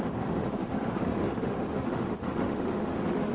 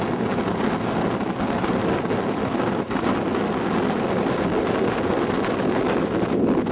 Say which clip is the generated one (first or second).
first